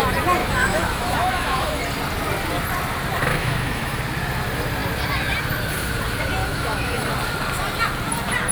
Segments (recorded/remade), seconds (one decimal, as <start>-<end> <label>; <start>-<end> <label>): 0.0-0.4 recorded; 0.4-1.8 remade; 1.8-3.2 recorded; 3.2-4.0 remade; 4.0-6.4 recorded; 6.4-7.1 remade; 7.1-8.5 recorded